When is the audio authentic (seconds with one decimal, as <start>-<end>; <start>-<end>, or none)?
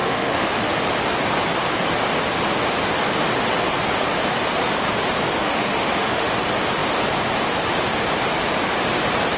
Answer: 0.7-5.4; 6.3-9.4